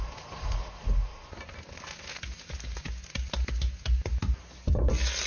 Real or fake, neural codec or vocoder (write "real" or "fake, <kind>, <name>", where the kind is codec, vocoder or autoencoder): real